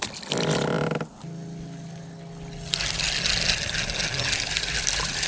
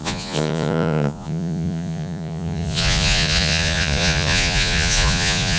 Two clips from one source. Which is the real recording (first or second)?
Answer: first